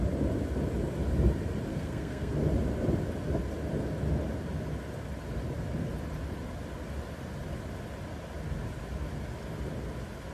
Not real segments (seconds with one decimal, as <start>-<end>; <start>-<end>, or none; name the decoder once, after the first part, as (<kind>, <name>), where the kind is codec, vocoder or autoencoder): 1.7-2.3 (codec, SNAC)